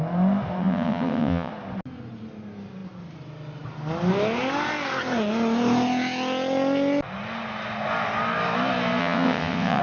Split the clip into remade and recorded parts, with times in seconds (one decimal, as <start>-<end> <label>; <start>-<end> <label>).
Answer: 0.0-0.6 recorded; 0.6-1.5 remade; 1.5-9.0 recorded; 9.0-9.8 remade